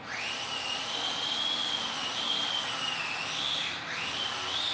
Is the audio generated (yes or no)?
no